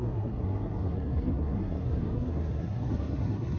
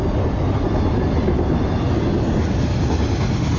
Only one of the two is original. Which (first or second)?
second